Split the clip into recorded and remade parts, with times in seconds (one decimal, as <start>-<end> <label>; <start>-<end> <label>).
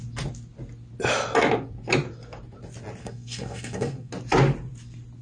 0.0-3.0 recorded; 3.0-4.1 remade; 4.1-5.2 recorded